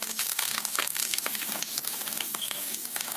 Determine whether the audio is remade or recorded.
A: remade